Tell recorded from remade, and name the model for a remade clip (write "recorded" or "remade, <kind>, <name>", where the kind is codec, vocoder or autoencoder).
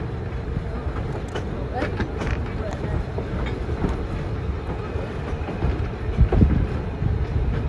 recorded